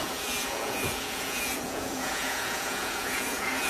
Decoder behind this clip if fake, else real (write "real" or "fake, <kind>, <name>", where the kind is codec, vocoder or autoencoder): fake, vocoder, Vocos